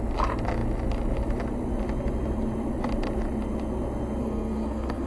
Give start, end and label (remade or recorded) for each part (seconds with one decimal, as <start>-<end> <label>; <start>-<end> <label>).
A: 0.0-4.2 recorded; 4.2-5.1 remade